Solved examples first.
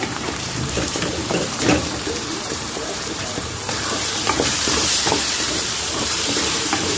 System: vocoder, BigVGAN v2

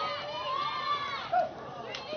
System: vocoder, BigVGAN v2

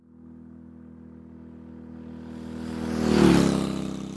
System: none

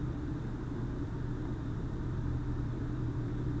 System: vocoder, BigVGAN v2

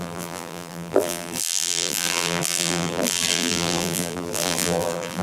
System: vocoder, BigVGAN v2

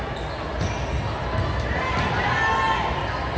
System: none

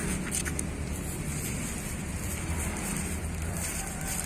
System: vocoder, BigVGAN v2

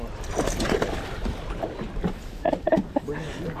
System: none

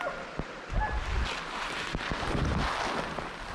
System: none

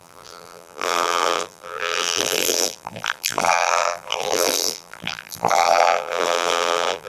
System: vocoder, BigVGAN v2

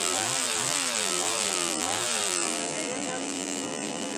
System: vocoder, BigVGAN v2